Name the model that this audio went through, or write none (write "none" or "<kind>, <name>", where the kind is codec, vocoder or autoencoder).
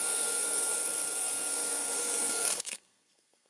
codec, SNAC